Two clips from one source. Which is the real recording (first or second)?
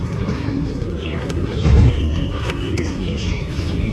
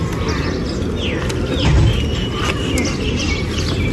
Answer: second